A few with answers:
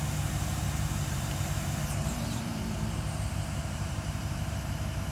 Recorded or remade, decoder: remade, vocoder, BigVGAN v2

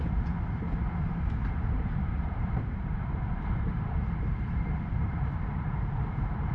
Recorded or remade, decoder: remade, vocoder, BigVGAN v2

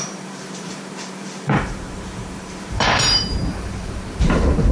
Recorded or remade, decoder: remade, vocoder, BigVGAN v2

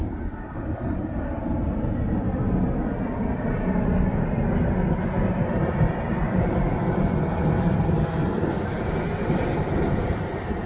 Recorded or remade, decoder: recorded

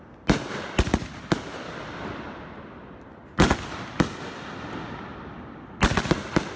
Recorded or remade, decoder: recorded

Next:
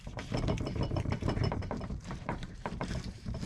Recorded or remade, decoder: remade, vocoder, BigVGAN v2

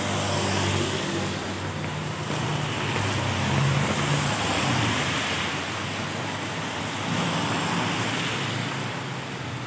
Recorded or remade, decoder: recorded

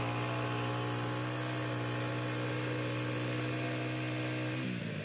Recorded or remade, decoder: recorded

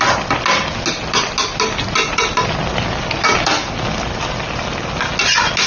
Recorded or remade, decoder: recorded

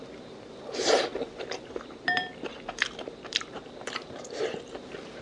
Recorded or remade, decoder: remade, vocoder, BigVGAN v2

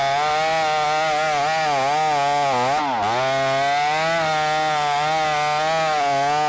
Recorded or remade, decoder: recorded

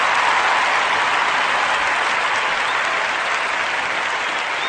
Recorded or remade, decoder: recorded